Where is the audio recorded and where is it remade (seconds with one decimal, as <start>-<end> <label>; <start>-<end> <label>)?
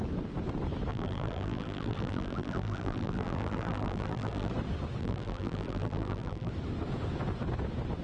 0.0-0.9 recorded; 0.9-4.5 remade; 4.5-5.0 recorded; 5.0-6.5 remade; 6.5-8.0 recorded